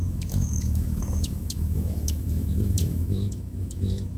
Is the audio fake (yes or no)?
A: yes